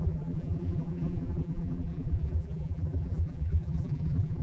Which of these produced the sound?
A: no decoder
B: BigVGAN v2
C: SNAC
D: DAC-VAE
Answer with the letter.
B